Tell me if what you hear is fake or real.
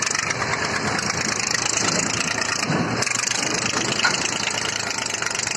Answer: real